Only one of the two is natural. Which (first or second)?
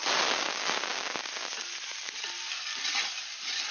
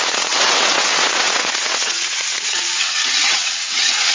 first